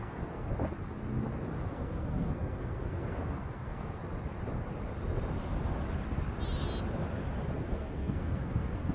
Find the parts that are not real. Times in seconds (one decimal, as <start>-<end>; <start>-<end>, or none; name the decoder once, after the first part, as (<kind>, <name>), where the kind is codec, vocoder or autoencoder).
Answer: 0.0-0.5 (codec, SNAC); 1.7-4.0; 7.7-8.9

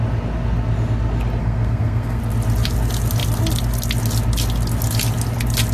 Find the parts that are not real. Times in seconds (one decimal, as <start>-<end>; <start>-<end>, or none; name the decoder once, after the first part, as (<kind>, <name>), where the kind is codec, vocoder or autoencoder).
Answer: 1.4-2.2 (codec, SNAC)

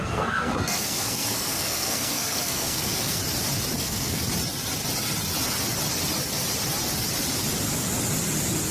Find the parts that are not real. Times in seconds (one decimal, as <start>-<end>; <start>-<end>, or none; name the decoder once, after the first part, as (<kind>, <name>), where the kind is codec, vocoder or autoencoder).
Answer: 0.0-3.2 (codec, SNAC); 3.8-4.2

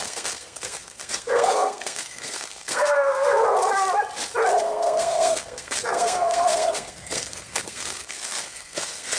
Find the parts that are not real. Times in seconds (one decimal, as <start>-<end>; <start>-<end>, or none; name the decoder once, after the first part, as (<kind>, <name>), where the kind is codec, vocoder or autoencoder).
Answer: 0.0-3.4 (codec, SNAC); 4.6-9.2

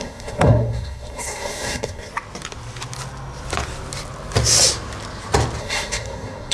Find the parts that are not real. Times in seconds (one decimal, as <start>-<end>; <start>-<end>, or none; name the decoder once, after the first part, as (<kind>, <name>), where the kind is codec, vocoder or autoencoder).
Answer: 0.0-2.1 (codec, SNAC); 5.6-6.5

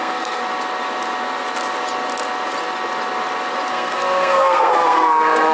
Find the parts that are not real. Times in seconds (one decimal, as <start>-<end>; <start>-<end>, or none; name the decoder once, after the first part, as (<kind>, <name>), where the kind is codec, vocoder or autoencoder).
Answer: 0.0-0.4 (codec, SNAC); 3.7-5.5

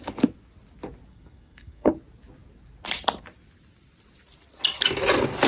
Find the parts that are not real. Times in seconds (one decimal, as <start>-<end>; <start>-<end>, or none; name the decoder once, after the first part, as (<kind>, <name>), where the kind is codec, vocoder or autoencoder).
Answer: 1.1-1.9 (codec, SNAC)

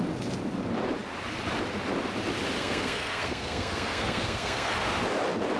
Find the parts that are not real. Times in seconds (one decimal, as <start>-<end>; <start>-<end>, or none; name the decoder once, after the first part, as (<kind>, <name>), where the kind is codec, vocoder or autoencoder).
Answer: 2.6-4.7 (codec, SNAC)